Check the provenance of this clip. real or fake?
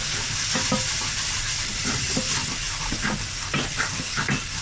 real